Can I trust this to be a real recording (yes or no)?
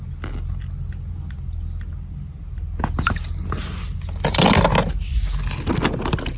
yes